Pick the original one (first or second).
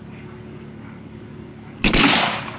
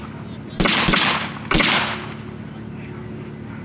second